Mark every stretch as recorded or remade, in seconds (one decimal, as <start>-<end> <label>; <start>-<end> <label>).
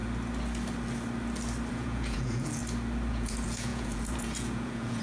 0.0-1.7 recorded; 1.7-2.6 remade; 2.6-3.1 recorded; 3.1-5.0 remade